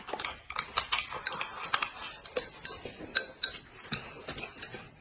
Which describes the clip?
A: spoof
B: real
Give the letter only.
B